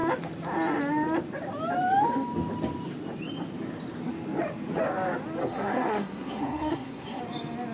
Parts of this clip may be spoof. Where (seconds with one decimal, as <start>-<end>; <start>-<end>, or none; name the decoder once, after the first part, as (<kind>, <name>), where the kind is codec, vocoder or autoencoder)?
5.4-7.2 (codec, SNAC)